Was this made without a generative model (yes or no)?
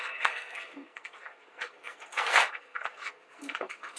no